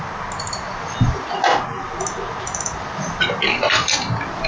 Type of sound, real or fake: real